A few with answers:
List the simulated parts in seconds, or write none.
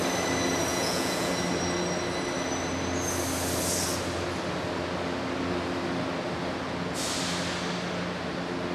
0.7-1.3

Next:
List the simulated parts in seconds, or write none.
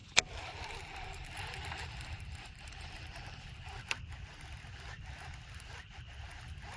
0.0-3.4